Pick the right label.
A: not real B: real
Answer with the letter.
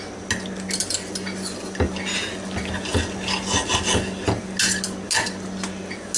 B